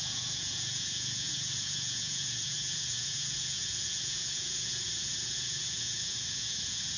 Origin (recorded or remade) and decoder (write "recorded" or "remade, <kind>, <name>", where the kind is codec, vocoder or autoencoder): remade, vocoder, Vocos